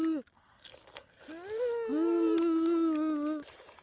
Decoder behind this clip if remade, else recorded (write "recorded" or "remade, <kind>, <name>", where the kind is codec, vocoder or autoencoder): recorded